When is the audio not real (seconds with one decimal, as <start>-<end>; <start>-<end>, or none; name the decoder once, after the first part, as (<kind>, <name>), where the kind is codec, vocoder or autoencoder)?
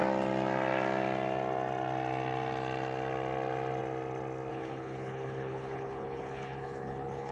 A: 4.5-7.3 (codec, HILCodec)